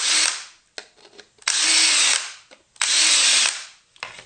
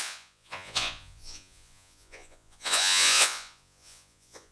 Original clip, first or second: first